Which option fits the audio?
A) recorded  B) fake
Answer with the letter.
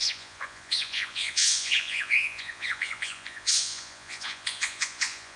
B